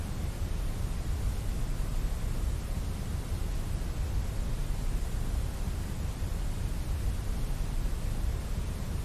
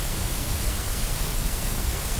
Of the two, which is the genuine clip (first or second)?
first